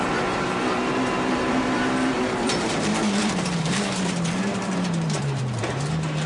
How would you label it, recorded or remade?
remade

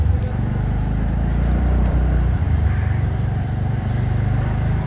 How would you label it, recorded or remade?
remade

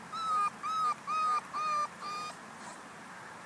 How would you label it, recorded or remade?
recorded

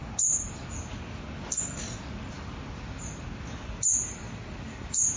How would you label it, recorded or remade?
recorded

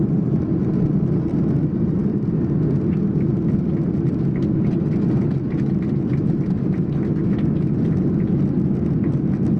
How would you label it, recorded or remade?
recorded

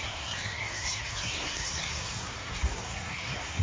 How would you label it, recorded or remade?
remade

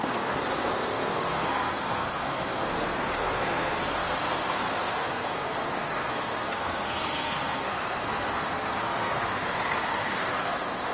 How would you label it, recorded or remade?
remade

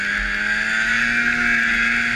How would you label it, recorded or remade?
recorded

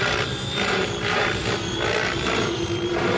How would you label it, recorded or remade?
recorded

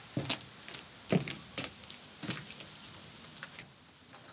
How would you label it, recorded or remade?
recorded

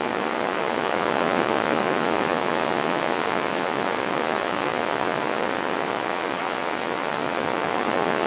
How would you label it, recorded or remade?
remade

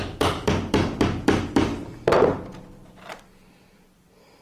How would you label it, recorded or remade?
remade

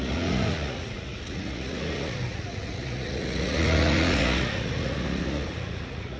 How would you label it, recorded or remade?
remade